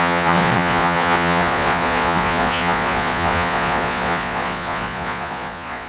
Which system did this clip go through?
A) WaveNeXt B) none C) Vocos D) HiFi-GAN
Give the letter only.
C